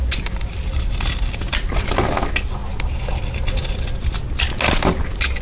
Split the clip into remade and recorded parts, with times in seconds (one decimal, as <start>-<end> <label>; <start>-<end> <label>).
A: 0.0-5.4 recorded